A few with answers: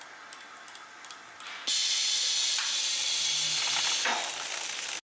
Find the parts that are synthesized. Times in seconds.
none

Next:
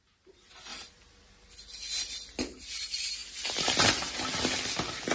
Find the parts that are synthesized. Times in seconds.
none